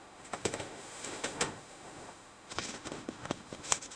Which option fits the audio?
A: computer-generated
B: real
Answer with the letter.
A